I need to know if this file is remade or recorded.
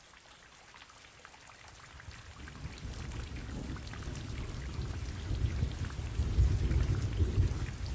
recorded